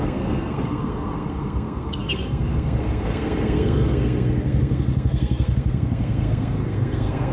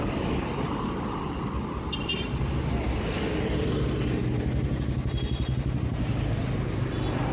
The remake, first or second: first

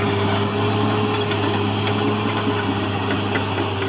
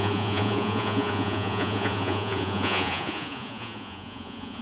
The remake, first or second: second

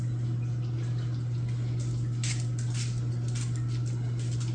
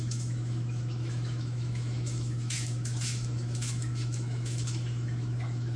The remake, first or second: second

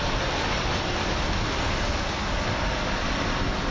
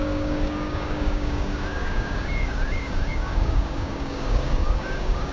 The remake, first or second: second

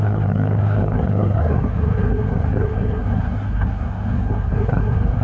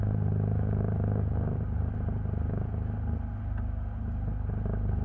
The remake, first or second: first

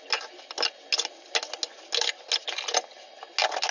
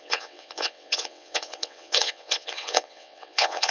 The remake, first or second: second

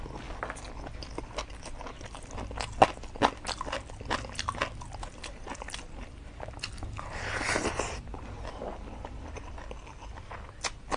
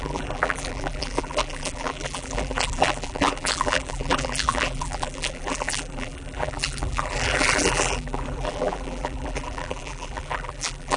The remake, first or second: second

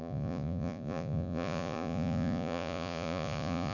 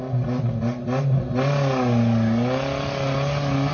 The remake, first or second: first